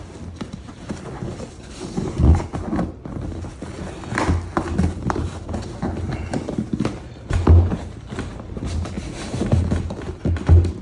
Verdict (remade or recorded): recorded